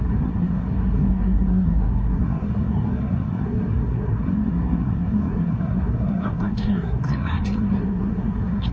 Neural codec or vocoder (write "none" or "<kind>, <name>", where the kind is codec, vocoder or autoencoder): codec, SNAC